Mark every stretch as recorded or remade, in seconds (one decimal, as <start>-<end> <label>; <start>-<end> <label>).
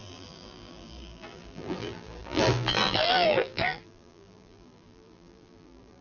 0.0-6.0 remade